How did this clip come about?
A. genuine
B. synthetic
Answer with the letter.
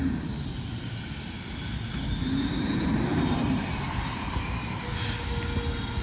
A